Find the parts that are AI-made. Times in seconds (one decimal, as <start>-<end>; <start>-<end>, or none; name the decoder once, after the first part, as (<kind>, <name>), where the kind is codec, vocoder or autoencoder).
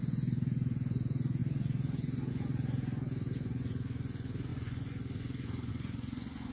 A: 0.0-6.5 (vocoder, Vocos)